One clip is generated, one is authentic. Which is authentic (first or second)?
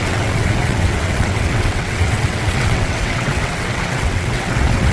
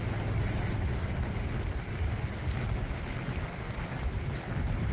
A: second